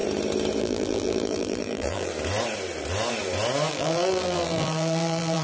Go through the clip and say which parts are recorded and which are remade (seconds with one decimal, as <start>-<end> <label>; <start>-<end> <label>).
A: 0.0-0.6 recorded; 0.6-2.1 remade; 2.1-3.7 recorded; 3.7-5.4 remade